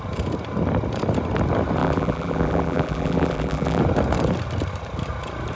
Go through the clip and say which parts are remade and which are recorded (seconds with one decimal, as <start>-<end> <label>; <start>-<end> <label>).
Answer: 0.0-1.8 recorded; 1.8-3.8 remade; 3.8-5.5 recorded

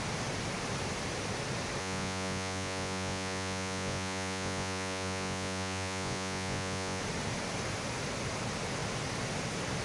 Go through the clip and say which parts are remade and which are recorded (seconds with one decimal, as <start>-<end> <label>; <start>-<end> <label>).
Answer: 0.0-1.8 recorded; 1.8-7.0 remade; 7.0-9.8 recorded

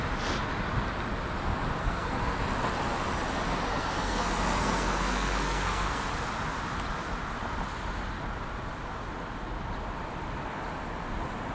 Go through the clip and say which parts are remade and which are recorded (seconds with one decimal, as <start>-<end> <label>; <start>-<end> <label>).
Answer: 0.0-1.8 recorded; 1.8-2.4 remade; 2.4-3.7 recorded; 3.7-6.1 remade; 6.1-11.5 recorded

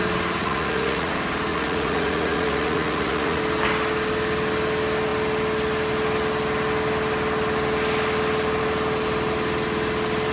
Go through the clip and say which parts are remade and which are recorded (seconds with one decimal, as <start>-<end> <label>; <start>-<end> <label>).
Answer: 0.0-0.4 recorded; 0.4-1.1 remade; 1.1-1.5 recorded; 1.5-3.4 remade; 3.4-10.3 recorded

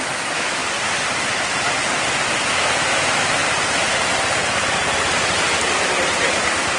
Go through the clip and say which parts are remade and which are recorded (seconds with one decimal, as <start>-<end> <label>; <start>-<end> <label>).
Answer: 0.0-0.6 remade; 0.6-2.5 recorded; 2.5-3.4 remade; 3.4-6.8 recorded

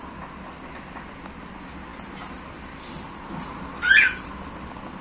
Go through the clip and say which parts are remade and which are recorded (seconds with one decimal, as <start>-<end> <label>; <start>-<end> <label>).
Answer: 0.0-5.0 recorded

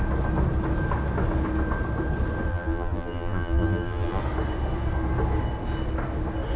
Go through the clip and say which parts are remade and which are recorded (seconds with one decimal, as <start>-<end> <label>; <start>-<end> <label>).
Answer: 0.0-2.5 recorded; 2.5-4.2 remade; 4.2-6.6 recorded

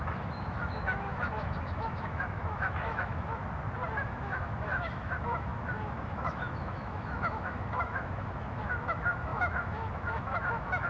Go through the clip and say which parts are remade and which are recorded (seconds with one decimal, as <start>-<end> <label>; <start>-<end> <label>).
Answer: 0.0-3.4 remade; 3.4-4.0 recorded; 4.0-10.9 remade